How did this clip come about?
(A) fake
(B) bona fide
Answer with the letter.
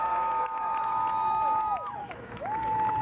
A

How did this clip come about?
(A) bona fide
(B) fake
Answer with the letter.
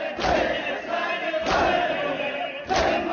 A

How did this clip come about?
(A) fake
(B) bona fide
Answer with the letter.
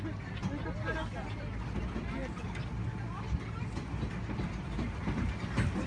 B